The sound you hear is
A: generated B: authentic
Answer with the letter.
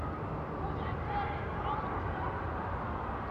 B